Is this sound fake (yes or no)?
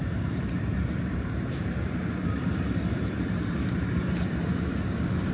yes